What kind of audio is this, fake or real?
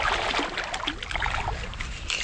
real